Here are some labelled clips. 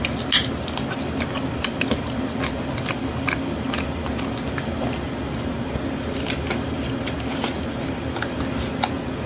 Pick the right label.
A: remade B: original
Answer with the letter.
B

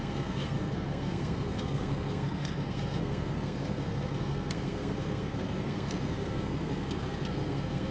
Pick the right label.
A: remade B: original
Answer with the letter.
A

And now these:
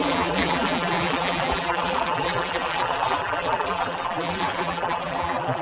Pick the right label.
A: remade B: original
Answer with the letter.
A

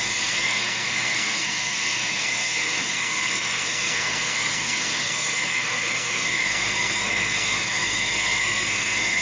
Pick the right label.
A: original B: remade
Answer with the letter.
B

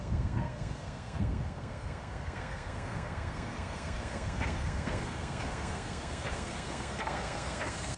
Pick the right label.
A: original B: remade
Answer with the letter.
B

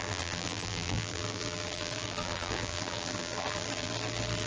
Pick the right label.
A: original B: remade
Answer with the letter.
B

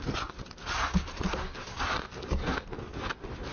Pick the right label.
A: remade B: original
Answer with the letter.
B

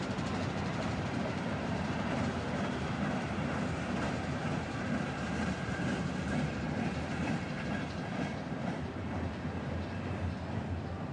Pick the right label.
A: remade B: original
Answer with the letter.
A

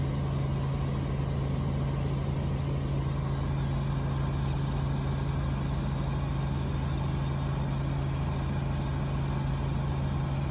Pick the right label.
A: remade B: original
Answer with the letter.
B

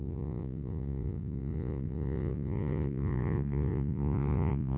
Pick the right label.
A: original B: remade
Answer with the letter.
B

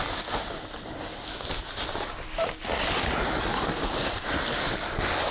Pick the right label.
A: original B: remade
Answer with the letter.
A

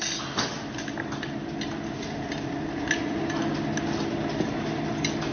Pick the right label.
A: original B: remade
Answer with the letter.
A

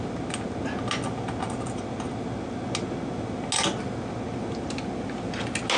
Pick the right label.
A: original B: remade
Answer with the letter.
A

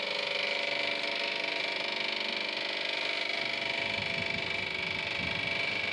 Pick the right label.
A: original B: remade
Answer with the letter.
A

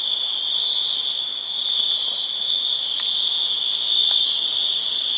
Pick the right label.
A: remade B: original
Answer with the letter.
B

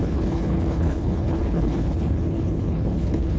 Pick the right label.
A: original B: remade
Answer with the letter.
B